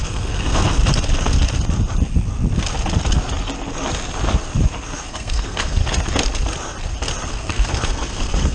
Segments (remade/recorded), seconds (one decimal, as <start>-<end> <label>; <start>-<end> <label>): 0.0-0.8 remade; 0.8-5.1 recorded; 5.1-5.8 remade; 5.8-7.3 recorded; 7.3-8.5 remade